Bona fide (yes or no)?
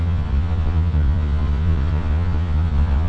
no